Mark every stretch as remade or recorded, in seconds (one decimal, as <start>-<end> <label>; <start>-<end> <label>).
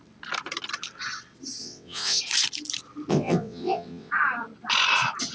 0.0-1.6 recorded; 1.6-2.2 remade; 2.2-3.1 recorded; 3.1-4.1 remade; 4.1-5.3 recorded